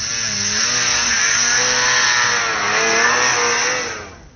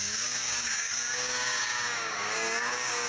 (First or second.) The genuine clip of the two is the first